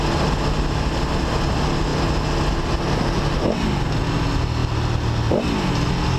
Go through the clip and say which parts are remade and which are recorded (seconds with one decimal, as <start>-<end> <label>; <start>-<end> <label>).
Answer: 0.0-6.2 recorded